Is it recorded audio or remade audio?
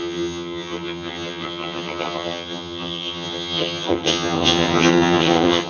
remade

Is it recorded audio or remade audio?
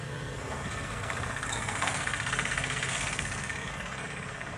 remade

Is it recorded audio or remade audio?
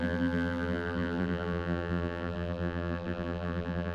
remade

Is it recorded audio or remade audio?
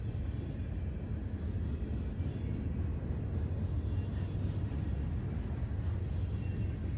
recorded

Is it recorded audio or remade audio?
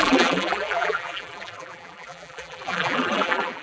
remade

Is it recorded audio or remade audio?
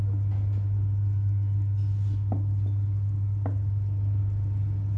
recorded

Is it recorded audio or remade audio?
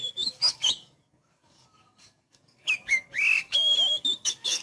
remade